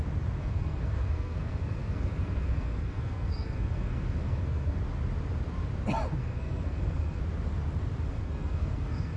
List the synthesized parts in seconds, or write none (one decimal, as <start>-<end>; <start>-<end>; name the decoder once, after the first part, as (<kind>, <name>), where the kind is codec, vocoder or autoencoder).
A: 0.4-4.8 (codec, SNAC); 6.2-7.2; 8.1-9.2